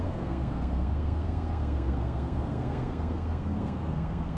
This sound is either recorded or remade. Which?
remade